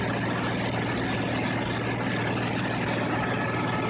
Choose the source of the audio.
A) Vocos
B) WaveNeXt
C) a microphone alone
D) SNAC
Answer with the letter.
C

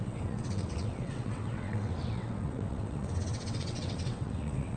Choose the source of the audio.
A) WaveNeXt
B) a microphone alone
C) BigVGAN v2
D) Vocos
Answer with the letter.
A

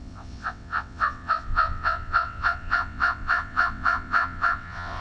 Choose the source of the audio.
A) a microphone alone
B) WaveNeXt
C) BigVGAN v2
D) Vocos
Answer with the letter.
B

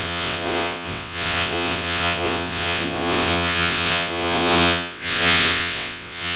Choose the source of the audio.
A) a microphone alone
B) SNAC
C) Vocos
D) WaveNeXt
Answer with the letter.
D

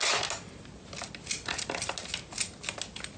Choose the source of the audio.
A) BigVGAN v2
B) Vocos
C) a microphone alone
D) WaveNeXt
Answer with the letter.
C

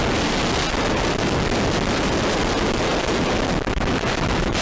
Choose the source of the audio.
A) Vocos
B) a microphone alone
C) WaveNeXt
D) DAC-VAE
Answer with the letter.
B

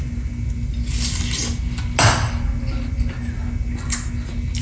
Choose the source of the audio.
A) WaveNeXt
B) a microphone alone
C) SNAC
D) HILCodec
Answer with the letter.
B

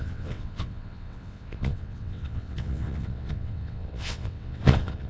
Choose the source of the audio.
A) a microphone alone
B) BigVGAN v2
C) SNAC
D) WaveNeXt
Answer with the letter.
D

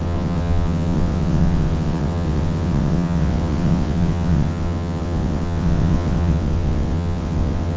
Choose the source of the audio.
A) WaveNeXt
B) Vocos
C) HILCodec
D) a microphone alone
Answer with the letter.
A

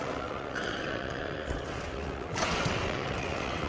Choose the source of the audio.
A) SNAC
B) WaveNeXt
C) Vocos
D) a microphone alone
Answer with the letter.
B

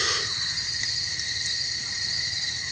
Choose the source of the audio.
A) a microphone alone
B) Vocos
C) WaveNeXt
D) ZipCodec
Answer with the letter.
A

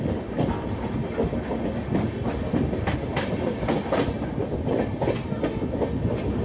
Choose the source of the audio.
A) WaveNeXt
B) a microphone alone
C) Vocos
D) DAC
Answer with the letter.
B